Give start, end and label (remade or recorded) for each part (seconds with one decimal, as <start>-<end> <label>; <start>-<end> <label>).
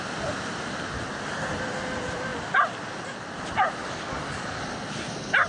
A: 0.0-3.8 recorded; 3.8-4.6 remade; 4.6-5.5 recorded